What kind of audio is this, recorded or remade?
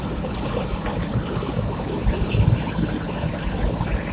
recorded